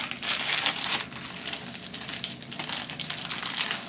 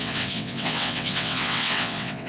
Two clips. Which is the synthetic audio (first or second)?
second